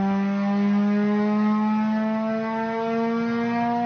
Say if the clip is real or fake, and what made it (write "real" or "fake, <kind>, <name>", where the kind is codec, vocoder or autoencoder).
real